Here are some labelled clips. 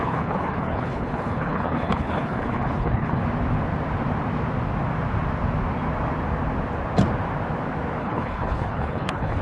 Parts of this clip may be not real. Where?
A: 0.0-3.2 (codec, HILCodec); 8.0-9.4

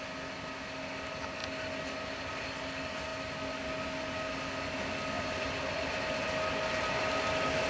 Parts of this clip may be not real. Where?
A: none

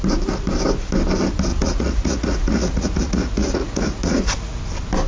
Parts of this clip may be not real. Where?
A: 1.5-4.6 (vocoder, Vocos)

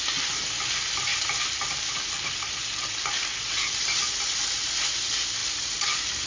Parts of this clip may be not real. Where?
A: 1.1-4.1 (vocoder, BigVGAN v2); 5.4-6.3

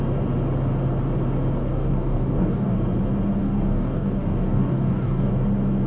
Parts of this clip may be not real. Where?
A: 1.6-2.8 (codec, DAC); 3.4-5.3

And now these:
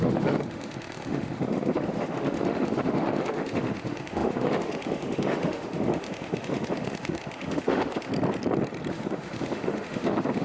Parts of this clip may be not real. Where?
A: 0.0-8.1 (autoencoder, DAC-VAE); 8.9-10.4